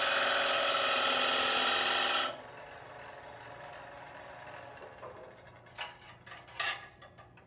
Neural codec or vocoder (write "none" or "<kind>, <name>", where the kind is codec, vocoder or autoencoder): none